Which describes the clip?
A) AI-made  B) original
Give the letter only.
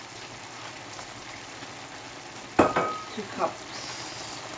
B